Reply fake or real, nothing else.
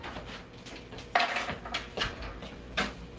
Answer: real